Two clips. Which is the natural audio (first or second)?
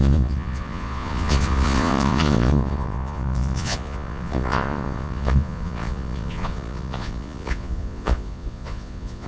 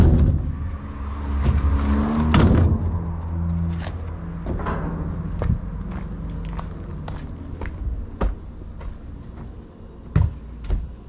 second